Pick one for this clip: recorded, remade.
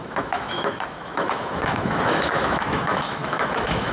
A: remade